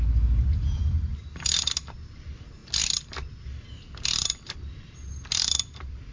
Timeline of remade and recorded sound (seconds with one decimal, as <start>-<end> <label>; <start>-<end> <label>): 0.0-6.1 recorded